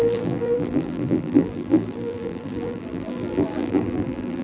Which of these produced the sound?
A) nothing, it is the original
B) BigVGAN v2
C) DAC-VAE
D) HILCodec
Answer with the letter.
B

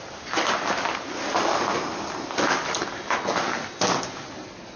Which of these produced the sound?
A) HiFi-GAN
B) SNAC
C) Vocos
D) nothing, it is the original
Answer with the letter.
D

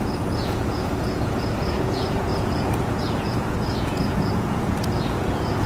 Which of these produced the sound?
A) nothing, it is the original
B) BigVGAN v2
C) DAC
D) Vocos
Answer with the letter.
D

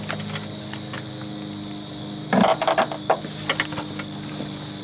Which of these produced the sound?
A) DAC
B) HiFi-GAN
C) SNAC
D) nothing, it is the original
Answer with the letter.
D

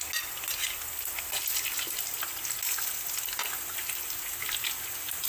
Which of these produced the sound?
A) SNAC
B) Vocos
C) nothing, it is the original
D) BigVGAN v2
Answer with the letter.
C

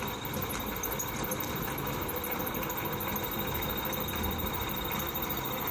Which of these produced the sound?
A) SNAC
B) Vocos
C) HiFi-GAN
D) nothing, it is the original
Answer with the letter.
D